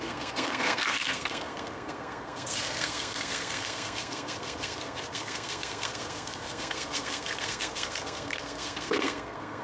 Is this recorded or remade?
remade